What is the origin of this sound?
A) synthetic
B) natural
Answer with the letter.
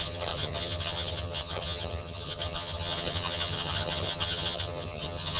A